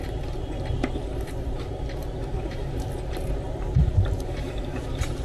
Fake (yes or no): yes